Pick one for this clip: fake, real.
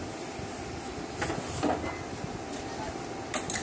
real